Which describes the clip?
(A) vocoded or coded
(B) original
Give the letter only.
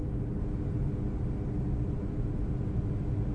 B